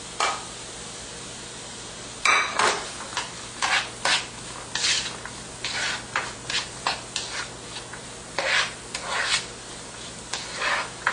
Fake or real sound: real